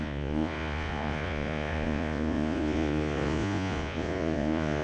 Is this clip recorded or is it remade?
remade